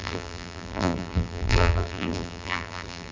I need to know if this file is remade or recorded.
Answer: remade